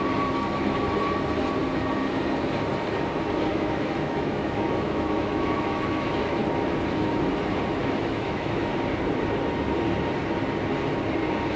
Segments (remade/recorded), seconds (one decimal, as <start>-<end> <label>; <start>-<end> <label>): 0.0-3.5 recorded; 3.5-6.4 remade; 6.4-7.8 recorded; 7.8-8.6 remade; 8.6-11.6 recorded